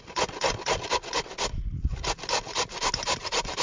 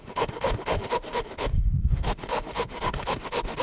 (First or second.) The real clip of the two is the first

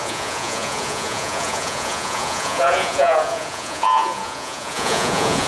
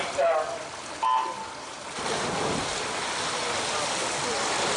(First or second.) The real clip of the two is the second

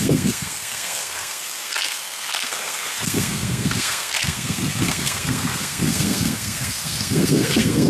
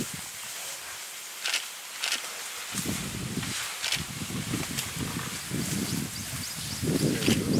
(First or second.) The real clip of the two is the second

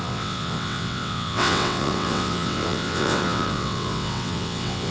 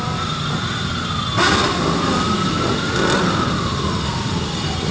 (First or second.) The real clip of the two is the second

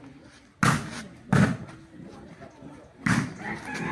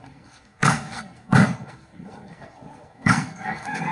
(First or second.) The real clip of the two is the first